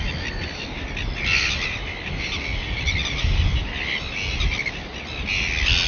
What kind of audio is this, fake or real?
real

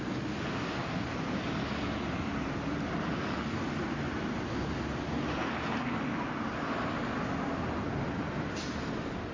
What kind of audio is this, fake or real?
real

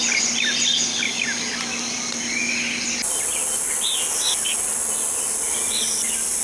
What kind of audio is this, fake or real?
real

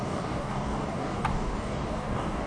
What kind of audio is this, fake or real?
fake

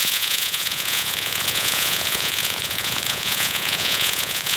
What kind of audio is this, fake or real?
fake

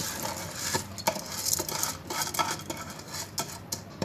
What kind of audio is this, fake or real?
real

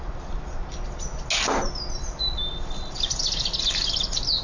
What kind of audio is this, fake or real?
real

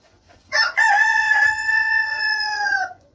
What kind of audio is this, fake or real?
fake